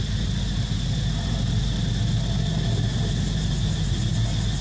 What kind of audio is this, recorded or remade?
recorded